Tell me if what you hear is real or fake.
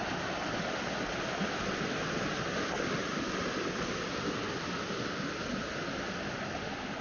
real